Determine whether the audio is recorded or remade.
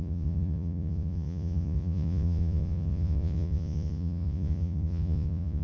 remade